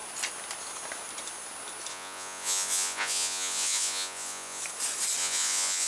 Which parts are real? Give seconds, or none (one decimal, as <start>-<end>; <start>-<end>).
0.0-1.9; 4.6-5.2